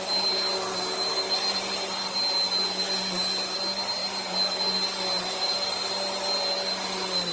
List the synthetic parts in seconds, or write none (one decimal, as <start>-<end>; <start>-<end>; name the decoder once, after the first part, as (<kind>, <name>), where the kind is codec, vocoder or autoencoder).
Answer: none